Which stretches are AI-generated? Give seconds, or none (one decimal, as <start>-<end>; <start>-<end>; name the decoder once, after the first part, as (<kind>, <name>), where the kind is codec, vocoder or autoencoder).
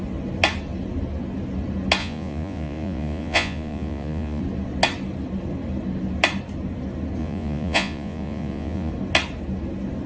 2.0-4.4 (vocoder, Vocos); 7.2-8.9